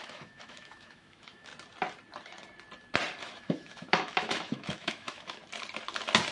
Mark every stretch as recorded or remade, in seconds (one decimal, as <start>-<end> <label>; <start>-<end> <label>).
0.0-1.5 remade; 1.5-3.2 recorded; 3.2-5.4 remade; 5.4-6.3 recorded